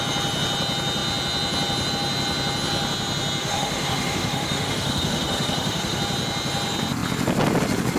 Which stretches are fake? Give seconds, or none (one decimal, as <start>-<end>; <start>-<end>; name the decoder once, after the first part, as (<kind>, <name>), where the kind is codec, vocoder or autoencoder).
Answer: 3.4-6.0 (autoencoder, DAC-VAE)